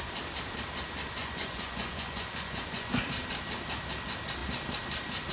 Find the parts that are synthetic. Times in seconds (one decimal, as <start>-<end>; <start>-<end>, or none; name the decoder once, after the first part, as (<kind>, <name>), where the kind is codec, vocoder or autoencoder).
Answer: 1.2-3.0 (vocoder, Vocos)